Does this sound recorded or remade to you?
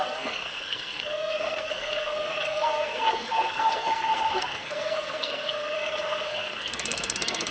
remade